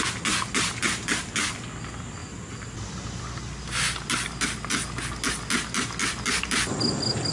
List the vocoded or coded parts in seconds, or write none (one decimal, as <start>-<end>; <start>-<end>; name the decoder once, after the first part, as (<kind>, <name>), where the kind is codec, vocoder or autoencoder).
none